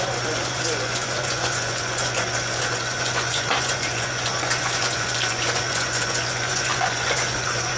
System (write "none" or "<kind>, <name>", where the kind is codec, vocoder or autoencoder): vocoder, Vocos